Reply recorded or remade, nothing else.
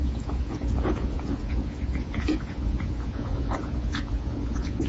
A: remade